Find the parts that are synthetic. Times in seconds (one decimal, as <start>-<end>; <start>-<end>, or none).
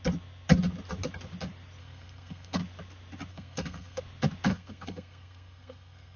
1.8-2.6; 3.3-4.0; 4.5-6.2